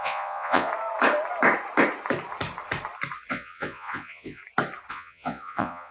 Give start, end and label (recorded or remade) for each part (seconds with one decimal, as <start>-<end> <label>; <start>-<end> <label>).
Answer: 0.0-0.7 remade; 0.7-3.3 recorded; 3.3-4.4 remade; 4.4-4.9 recorded; 4.9-5.9 remade